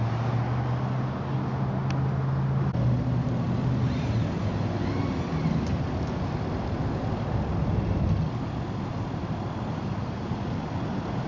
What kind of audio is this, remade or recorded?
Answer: recorded